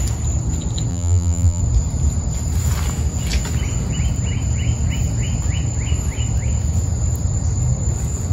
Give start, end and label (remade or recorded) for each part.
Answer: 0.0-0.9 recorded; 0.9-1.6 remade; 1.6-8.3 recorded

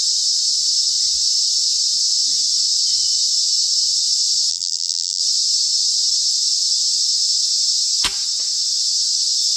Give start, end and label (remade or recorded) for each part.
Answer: 0.0-4.5 recorded; 4.5-5.2 remade; 5.2-9.6 recorded

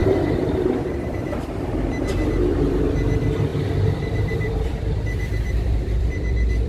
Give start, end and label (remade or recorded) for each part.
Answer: 0.0-6.7 remade

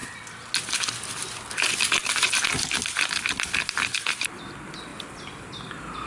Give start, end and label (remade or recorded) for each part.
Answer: 0.0-3.7 recorded; 3.7-4.9 remade; 4.9-6.1 recorded

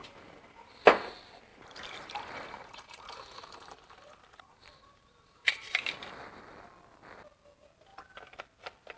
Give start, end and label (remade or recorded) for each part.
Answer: 0.0-1.1 remade; 1.1-1.5 recorded; 1.5-5.7 remade; 5.7-9.0 recorded

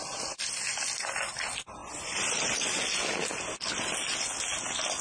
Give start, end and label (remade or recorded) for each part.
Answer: 0.0-0.5 remade; 0.5-1.8 recorded; 1.8-2.8 remade; 2.8-5.0 recorded